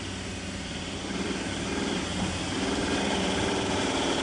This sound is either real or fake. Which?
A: fake